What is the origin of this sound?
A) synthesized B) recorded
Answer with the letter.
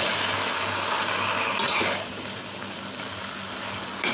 B